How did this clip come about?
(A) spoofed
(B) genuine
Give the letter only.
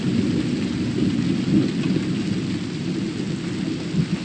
B